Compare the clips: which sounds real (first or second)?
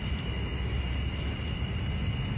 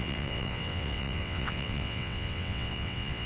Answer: first